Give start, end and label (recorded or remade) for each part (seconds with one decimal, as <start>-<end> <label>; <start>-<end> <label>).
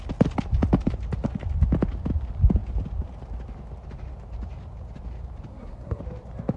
0.0-5.5 recorded; 5.5-6.0 remade; 6.0-6.6 recorded